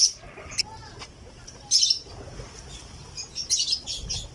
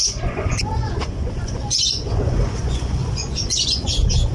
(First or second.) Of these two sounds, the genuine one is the first